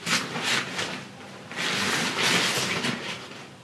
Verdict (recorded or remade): recorded